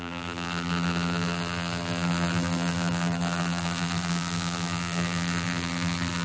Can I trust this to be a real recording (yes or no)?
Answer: no